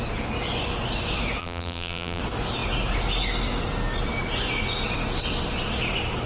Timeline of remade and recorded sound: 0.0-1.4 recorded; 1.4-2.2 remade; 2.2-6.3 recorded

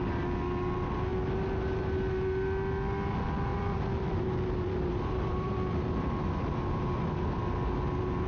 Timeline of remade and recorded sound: 0.0-3.5 recorded; 3.5-7.4 remade; 7.4-8.3 recorded

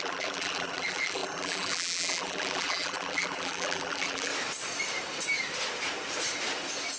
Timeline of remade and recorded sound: 0.0-4.3 remade; 4.3-7.0 recorded

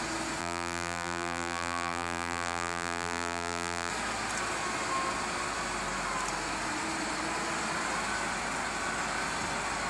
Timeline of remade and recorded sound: 0.0-0.4 recorded; 0.4-3.9 remade; 3.9-9.9 recorded

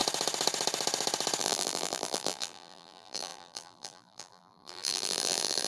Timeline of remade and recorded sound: 0.0-1.4 recorded; 1.4-5.7 remade